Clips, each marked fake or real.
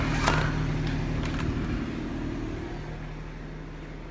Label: real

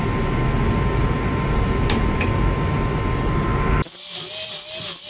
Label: real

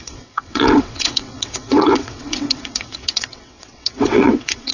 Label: fake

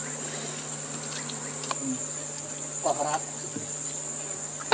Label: real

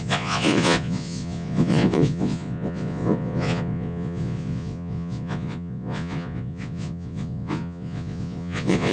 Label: fake